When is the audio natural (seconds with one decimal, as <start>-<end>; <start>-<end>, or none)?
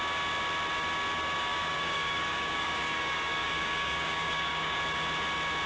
0.0-1.4; 4.8-5.7